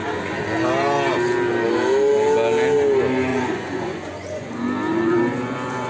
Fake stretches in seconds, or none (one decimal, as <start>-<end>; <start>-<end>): 3.3-4.5; 4.9-5.9